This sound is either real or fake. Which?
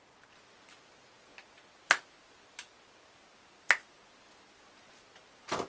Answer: real